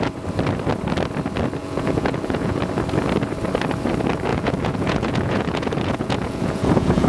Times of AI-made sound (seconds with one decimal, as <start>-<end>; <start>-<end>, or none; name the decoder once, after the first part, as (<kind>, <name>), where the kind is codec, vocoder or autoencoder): 1.6-2.6 (vocoder, Vocos); 4.3-7.1